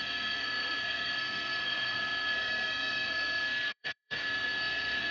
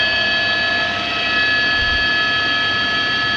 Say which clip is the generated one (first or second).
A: first